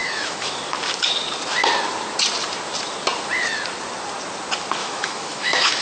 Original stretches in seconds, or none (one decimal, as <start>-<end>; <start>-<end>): 0.6-4.8